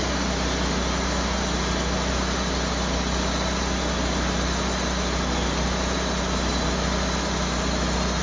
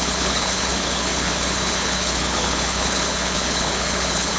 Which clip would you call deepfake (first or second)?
second